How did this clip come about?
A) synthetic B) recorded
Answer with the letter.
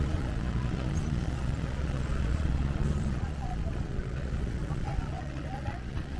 A